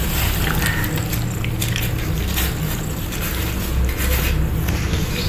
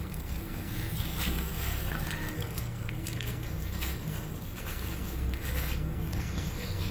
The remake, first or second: second